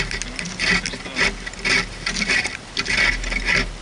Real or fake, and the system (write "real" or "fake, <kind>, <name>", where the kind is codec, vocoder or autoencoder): real